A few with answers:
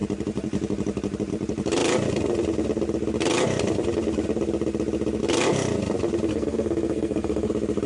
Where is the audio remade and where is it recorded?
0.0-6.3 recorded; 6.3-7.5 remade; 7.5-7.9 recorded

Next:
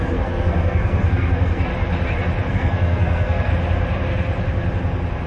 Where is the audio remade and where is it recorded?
0.0-1.7 remade; 1.7-2.5 recorded; 2.5-3.5 remade; 3.5-5.3 recorded

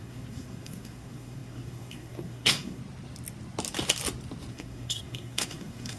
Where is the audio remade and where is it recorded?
0.0-2.8 remade; 2.8-4.5 recorded; 4.5-6.0 remade